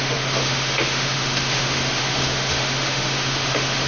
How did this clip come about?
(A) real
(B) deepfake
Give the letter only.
B